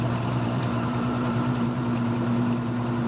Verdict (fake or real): fake